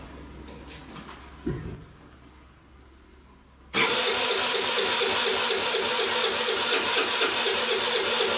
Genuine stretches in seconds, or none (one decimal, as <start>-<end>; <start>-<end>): 0.0-8.4